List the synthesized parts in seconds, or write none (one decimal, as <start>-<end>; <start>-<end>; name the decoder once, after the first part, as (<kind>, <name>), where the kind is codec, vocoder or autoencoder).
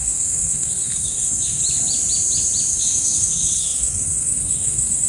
0.0-1.6 (codec, SNAC); 2.7-5.1